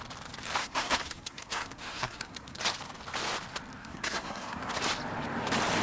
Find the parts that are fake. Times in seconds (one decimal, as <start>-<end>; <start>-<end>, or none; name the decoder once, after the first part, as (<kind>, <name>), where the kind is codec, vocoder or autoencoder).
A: 0.6-2.6 (codec, SNAC); 3.8-4.8